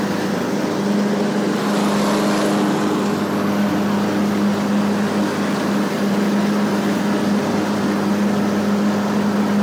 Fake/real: real